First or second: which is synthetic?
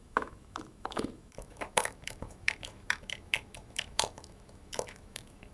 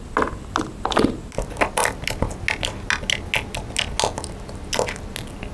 first